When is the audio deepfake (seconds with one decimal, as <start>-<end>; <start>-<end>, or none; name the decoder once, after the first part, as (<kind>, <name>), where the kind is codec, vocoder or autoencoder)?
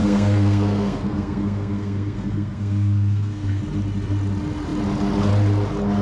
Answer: 0.0-3.6 (codec, SNAC)